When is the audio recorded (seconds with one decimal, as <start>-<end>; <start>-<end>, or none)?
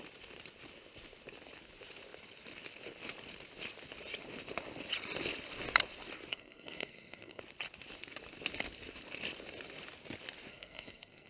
0.0-6.3; 7.4-10.5